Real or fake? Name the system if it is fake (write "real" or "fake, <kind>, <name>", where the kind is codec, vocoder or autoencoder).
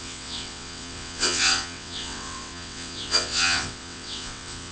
fake, vocoder, WaveNeXt